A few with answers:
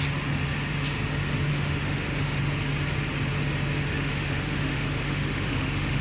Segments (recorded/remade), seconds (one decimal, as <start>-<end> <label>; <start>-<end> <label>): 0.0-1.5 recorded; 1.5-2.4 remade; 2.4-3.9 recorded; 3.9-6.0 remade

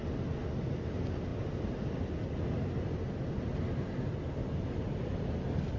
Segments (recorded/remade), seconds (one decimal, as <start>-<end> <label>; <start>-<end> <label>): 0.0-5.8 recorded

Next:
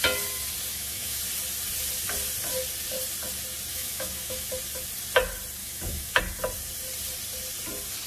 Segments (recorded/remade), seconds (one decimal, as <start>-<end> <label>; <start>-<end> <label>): 0.0-0.7 recorded; 0.7-1.2 remade; 1.2-3.7 recorded; 3.7-4.5 remade; 4.5-5.6 recorded; 5.6-6.2 remade; 6.2-8.1 recorded

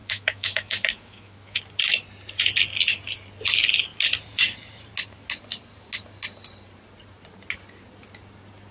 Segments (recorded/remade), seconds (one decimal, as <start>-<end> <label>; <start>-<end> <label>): 0.0-1.6 remade; 1.6-8.7 recorded